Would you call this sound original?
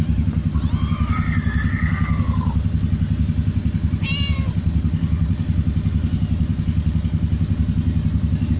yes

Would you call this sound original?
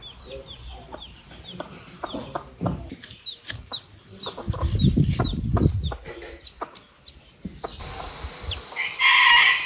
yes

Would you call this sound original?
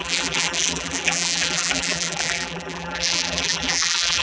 no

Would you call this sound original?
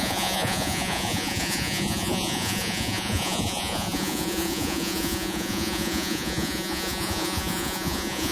no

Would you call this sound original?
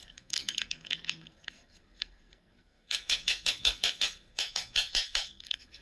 no